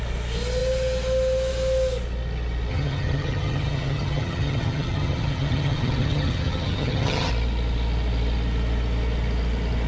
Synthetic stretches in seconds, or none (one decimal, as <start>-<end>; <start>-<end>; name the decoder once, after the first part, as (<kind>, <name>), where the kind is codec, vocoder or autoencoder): 2.7-7.3 (vocoder, HiFi-GAN)